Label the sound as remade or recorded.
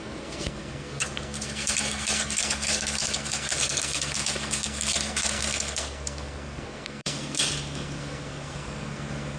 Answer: remade